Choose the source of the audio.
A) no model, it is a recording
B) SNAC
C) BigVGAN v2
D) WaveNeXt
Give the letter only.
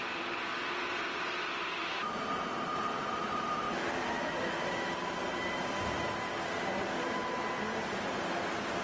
C